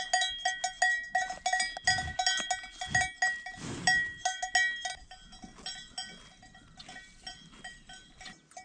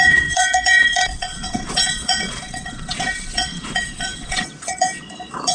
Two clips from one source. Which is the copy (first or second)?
second